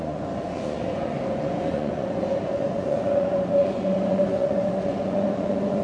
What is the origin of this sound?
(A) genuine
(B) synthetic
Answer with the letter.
B